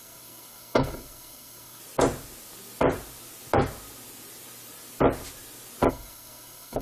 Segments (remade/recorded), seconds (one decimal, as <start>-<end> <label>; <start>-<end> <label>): 0.0-1.8 remade; 1.8-5.9 recorded; 5.9-6.8 remade